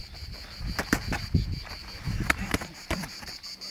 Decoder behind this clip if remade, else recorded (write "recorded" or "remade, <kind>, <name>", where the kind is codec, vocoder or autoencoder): remade, vocoder, BigVGAN v2